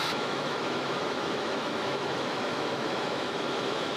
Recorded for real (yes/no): no